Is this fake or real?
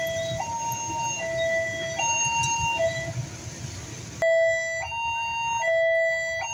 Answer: real